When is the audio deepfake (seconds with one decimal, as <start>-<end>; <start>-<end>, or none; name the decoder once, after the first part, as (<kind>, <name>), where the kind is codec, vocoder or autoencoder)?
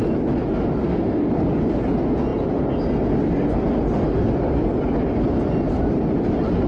0.8-1.3 (codec, SNAC)